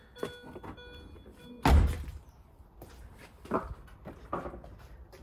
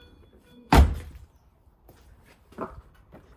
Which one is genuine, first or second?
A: first